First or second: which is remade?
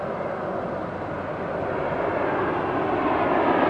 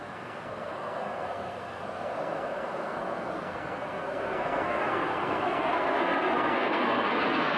second